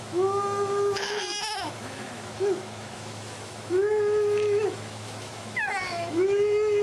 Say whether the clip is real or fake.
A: fake